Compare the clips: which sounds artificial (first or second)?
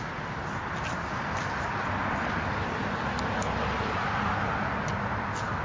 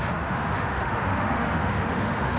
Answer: second